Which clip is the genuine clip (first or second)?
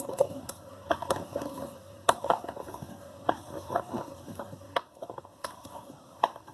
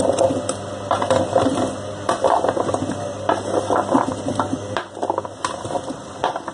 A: second